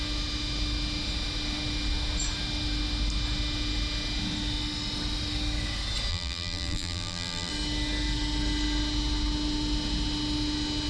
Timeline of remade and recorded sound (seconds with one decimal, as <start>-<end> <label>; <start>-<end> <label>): 0.0-6.1 recorded; 6.1-7.5 remade; 7.5-10.9 recorded